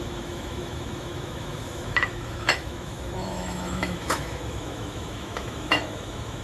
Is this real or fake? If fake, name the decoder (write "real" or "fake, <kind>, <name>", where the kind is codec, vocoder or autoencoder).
fake, autoencoder, DAC-VAE